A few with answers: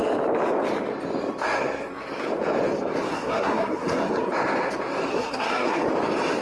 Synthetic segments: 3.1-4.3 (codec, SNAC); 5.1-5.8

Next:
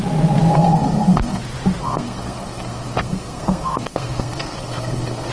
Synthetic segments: 0.5-1.4 (codec, SNAC); 1.8-5.3

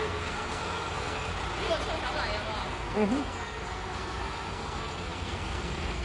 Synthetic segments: 0.0-1.3 (codec, SNAC); 2.7-6.0

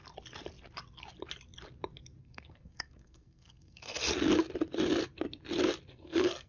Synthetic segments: 2.2-4.0 (codec, SNAC); 5.9-6.5

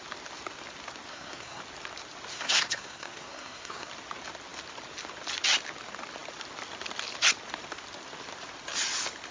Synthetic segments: 1.1-1.6 (codec, SNAC); 2.3-3.9

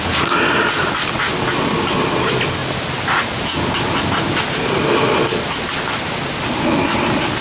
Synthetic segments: none

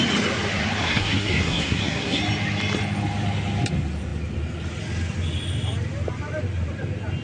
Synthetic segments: 0.8-2.2 (codec, SNAC)